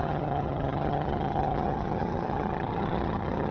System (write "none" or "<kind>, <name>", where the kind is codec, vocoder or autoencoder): vocoder, HiFi-GAN